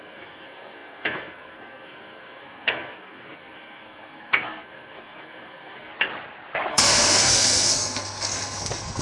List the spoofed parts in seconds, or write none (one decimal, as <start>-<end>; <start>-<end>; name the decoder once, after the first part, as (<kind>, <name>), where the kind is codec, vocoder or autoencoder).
0.0-5.9 (codec, SNAC); 6.7-9.0